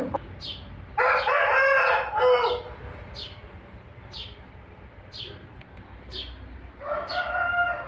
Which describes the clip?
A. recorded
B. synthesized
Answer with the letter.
A